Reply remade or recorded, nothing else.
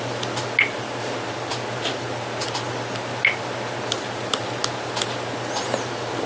recorded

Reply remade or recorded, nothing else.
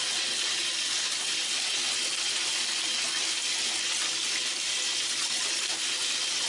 recorded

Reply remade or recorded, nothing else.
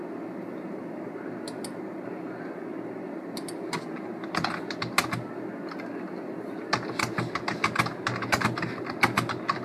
recorded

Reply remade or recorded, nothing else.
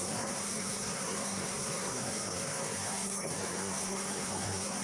remade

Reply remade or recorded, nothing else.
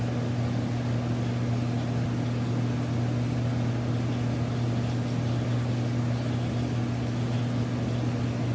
recorded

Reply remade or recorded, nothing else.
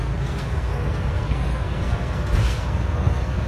remade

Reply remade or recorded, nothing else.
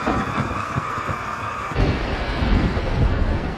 remade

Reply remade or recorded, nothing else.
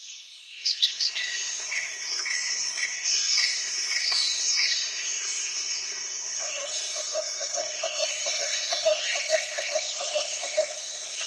remade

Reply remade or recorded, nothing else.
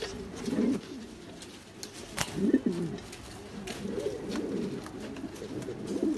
recorded